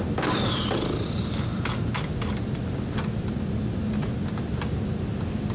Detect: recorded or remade recorded